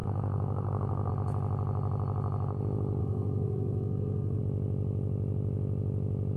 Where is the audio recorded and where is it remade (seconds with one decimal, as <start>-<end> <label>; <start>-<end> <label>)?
0.0-1.1 remade; 1.1-3.0 recorded; 3.0-4.4 remade; 4.4-6.4 recorded